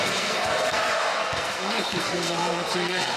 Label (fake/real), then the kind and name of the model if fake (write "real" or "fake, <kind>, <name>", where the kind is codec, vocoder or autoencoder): fake, codec, SNAC